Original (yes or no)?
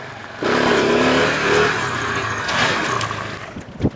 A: yes